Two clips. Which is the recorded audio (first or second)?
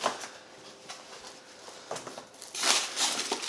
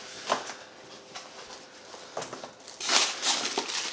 second